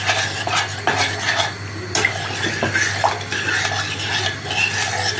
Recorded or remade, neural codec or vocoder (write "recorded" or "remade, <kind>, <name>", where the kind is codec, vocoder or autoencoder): recorded